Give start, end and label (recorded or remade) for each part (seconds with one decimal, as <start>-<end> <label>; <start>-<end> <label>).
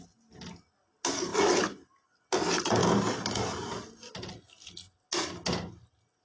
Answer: 0.0-6.2 recorded